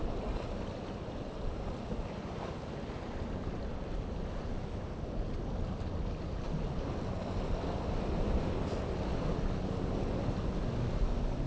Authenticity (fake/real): real